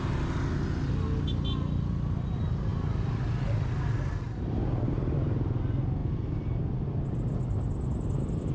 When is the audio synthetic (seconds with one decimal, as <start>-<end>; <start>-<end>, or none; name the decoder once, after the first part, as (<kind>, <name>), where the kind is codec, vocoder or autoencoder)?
none